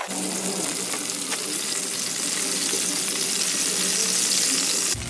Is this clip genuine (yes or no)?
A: yes